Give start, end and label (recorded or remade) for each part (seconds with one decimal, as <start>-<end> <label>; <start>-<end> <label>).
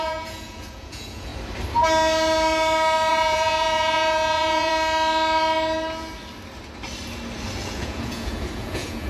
0.0-1.3 remade; 1.3-3.1 recorded; 3.1-4.7 remade; 4.7-7.6 recorded; 7.6-9.1 remade